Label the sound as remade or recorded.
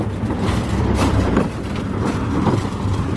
remade